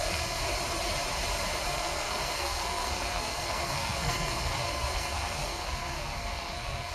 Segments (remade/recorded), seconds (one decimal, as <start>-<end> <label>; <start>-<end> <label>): 0.0-0.4 remade; 0.4-1.7 recorded; 1.7-6.9 remade